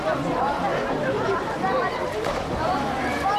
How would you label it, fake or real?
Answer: fake